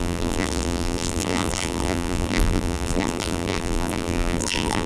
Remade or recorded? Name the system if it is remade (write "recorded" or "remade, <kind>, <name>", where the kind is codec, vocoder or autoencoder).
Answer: remade, vocoder, BigVGAN v2